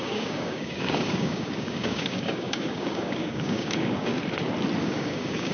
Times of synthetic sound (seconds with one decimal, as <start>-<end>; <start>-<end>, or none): 0.0-4.1; 4.8-5.5

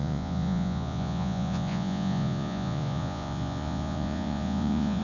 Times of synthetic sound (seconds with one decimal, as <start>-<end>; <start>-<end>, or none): 0.0-5.0

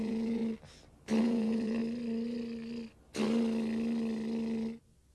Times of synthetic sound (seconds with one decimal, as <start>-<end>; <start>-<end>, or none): 0.0-0.4; 1.2-1.8